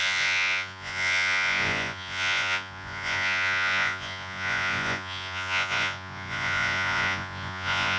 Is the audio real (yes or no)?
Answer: no